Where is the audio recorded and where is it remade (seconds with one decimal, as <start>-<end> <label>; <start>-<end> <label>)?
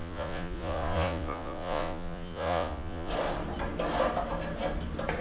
0.0-3.1 remade; 3.1-5.2 recorded